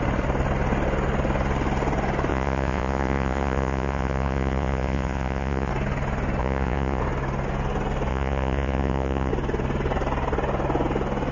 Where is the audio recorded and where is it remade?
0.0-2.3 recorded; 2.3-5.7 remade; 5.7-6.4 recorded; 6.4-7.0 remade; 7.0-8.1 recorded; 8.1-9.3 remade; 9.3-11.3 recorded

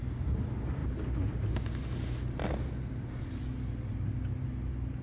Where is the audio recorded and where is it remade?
0.0-5.0 recorded

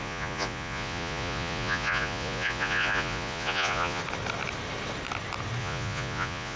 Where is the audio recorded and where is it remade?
0.0-4.0 remade; 4.0-5.6 recorded; 5.6-6.6 remade

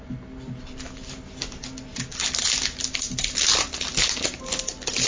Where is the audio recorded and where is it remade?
0.0-5.1 recorded

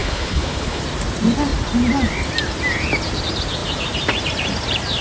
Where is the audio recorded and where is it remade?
0.0-0.8 remade; 0.8-5.0 recorded

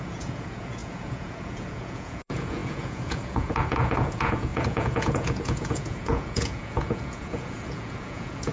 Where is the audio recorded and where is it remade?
0.0-8.5 remade